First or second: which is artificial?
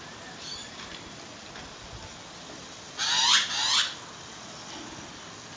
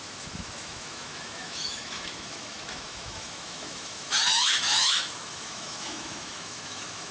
second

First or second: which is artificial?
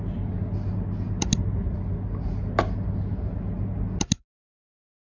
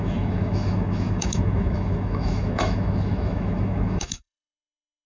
second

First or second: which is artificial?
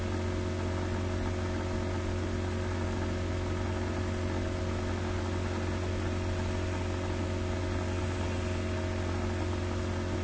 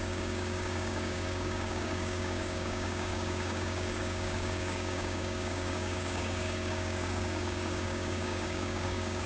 second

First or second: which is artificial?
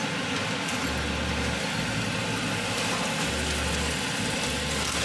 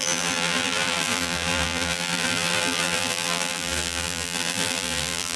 second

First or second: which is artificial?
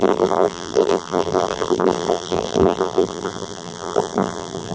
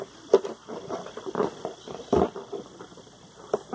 first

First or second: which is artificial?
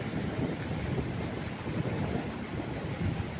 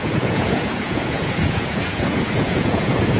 second